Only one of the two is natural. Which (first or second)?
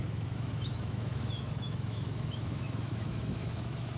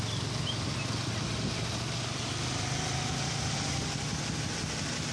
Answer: second